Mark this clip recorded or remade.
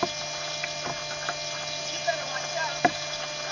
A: recorded